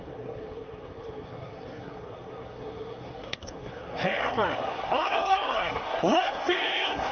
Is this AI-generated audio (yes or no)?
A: yes